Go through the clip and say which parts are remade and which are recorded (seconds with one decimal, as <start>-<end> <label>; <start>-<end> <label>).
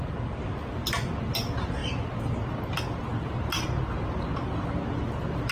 0.0-5.5 recorded